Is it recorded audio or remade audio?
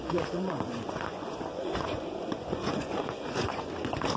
remade